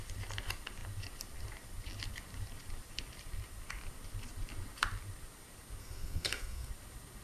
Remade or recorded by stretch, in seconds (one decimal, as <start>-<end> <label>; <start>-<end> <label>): 0.0-5.8 recorded; 5.8-6.7 remade; 6.7-7.2 recorded